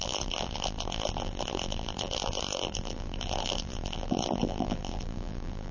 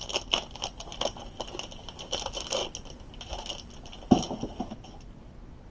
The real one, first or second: second